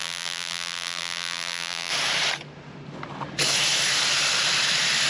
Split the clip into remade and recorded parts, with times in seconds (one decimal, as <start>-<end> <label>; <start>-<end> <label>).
0.0-1.9 remade; 1.9-5.1 recorded